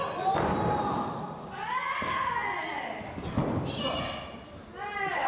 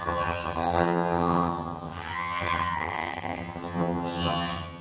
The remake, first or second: second